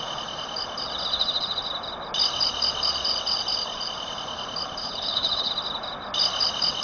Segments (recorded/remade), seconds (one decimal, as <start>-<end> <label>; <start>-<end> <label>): 0.0-4.8 recorded; 4.8-5.5 remade; 5.5-6.8 recorded